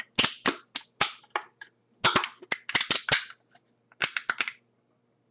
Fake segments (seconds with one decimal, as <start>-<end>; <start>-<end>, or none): none